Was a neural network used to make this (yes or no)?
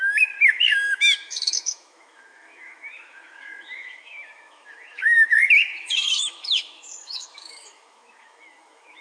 yes